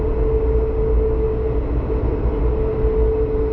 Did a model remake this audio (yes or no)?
no